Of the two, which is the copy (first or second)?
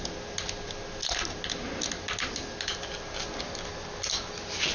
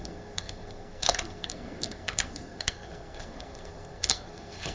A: second